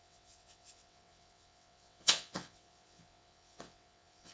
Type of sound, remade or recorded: remade